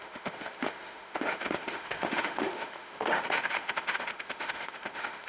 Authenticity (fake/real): fake